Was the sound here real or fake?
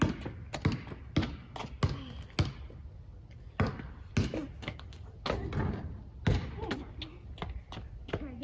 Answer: real